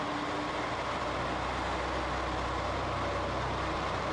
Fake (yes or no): no